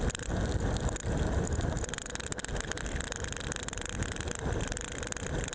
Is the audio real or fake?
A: real